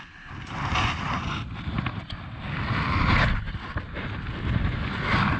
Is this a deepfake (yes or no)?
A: no